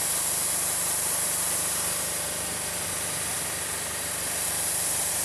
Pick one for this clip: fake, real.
real